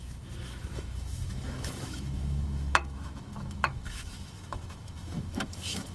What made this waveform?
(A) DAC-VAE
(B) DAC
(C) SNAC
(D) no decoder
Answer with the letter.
A